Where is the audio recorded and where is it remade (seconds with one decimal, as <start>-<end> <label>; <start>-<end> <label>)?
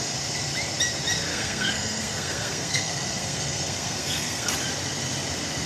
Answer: 0.0-1.3 recorded; 1.3-4.5 remade; 4.5-5.7 recorded